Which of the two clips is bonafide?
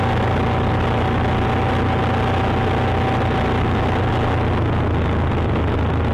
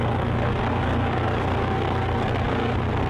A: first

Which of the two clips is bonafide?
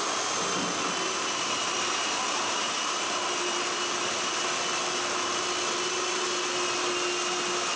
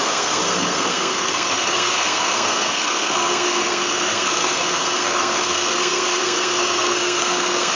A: first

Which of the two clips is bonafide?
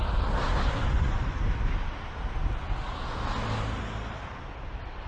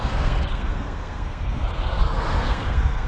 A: first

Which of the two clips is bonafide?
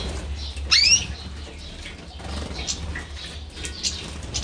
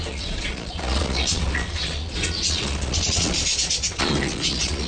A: first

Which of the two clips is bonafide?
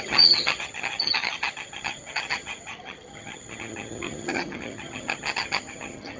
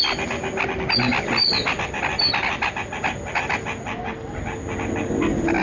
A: second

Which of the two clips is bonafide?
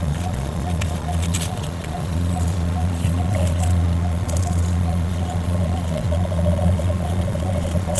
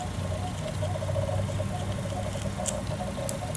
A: second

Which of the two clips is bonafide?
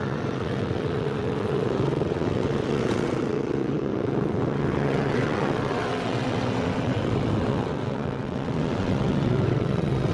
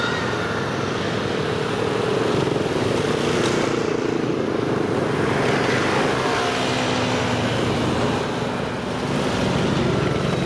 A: second